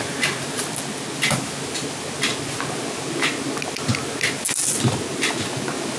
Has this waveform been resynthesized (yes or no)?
no